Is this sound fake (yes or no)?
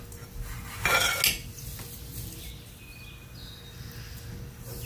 no